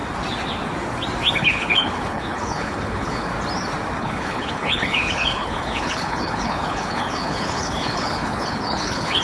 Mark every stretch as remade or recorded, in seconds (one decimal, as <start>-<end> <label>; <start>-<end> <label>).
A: 0.0-1.3 recorded; 1.3-3.3 remade; 3.3-4.0 recorded; 4.0-9.2 remade